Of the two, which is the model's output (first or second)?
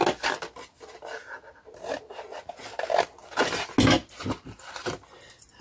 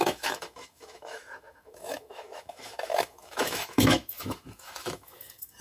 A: second